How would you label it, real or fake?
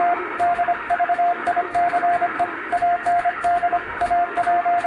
fake